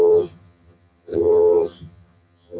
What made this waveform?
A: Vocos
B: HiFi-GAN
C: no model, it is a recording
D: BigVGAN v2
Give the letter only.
B